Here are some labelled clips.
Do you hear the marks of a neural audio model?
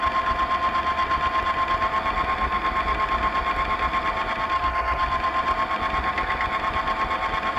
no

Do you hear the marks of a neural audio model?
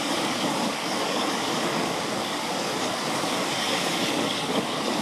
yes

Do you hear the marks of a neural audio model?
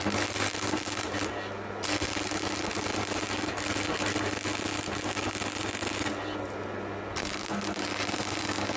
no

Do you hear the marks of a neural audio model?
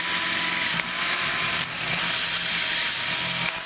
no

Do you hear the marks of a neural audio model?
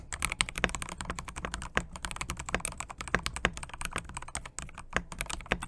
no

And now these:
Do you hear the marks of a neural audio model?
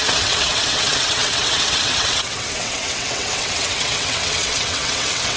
yes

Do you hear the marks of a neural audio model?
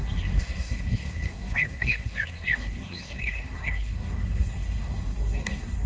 yes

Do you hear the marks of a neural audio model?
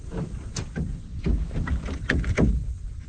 no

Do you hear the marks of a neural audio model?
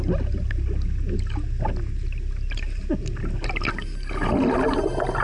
no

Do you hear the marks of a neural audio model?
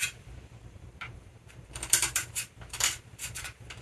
yes